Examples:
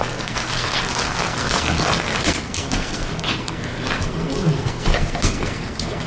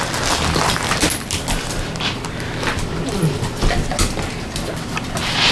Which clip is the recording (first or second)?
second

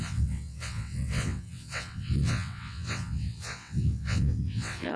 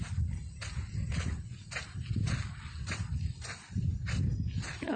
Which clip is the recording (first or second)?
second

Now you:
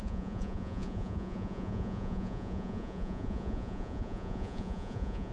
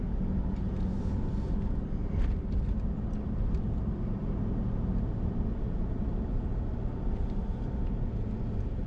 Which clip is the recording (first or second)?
second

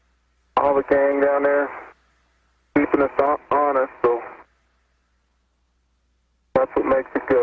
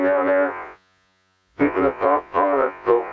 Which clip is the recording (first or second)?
first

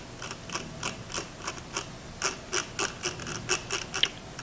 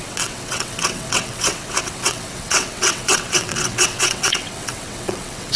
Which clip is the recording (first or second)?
first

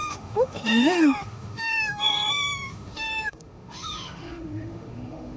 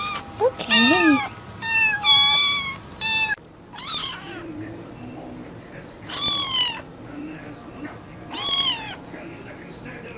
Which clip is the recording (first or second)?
second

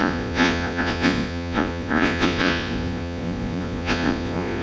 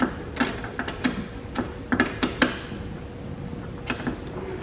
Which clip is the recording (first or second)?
second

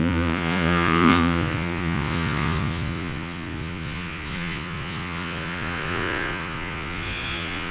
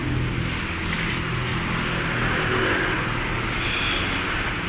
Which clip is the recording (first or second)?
second